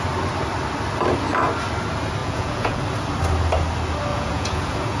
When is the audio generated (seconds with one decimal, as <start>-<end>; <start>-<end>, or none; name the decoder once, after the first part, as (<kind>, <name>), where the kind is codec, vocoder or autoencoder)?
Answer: 2.2-2.8 (vocoder, Vocos); 4.1-5.0